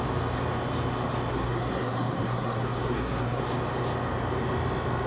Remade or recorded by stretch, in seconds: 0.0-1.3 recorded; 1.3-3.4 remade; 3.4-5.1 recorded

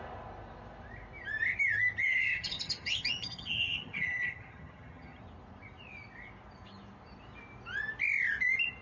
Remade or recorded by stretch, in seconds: 0.0-2.0 recorded; 2.0-5.2 remade; 5.2-8.8 recorded

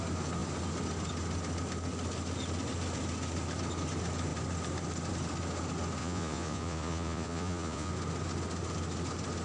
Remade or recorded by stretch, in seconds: 0.0-6.0 recorded; 6.0-7.9 remade; 7.9-9.4 recorded

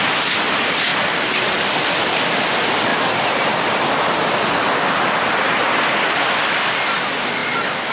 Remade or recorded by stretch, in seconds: 0.0-7.9 recorded

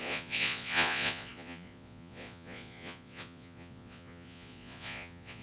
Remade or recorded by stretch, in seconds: 0.0-5.4 remade

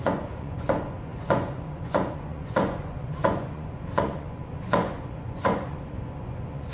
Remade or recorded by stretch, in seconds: 0.0-6.7 remade

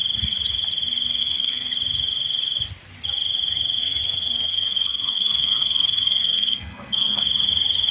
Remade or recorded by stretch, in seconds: 0.0-1.2 recorded; 1.2-1.7 remade; 1.7-3.8 recorded; 3.8-7.2 remade; 7.2-7.9 recorded

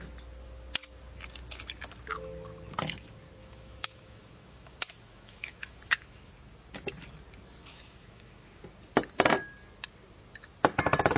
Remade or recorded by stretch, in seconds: 0.0-3.4 recorded; 3.4-6.3 remade; 6.3-7.6 recorded; 7.6-8.6 remade; 8.6-11.2 recorded